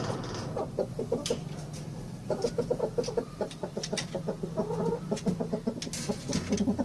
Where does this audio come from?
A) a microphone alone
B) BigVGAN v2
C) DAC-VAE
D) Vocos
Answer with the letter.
A